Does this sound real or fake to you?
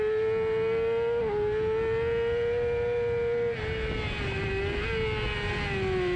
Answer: real